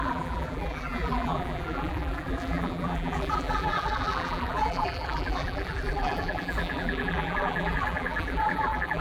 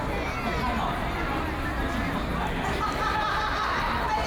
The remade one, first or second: first